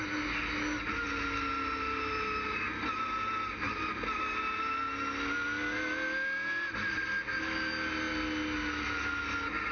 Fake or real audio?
real